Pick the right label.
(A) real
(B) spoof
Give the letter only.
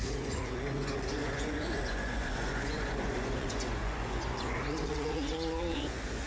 B